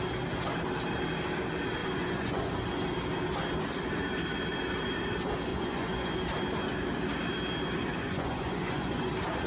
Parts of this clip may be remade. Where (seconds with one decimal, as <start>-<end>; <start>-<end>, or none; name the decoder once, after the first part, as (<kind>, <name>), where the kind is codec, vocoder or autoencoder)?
1.8-2.5 (vocoder, Vocos); 5.5-6.1; 7.9-9.1